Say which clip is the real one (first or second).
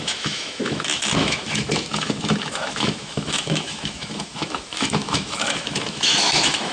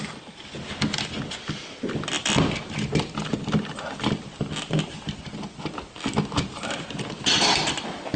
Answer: second